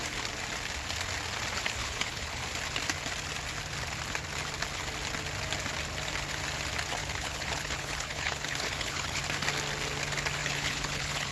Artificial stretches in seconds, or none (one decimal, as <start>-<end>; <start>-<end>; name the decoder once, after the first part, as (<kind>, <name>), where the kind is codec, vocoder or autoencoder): 1.8-2.4 (codec, HILCodec); 7.0-9.2; 10.4-11.3